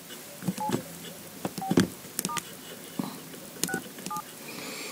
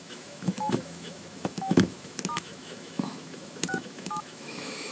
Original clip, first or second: first